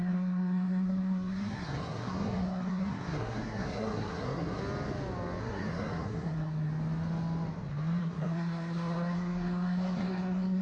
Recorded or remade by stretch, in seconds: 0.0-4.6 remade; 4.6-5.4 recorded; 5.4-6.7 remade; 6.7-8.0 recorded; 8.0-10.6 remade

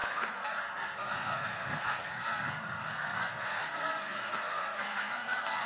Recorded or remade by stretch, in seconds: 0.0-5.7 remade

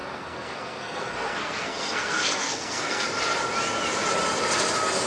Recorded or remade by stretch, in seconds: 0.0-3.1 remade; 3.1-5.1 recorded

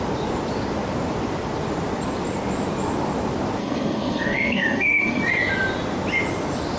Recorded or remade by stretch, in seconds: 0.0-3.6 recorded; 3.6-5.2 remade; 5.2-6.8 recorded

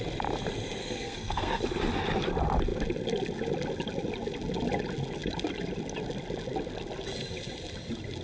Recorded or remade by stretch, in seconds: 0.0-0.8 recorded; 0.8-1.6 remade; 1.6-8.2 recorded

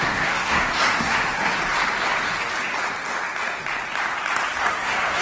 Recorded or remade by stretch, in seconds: 0.0-1.6 remade; 1.6-4.7 recorded; 4.7-5.2 remade

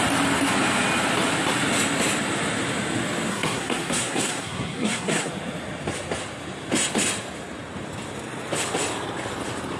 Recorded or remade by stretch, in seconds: 0.0-3.3 recorded; 3.3-5.3 remade; 5.3-9.8 recorded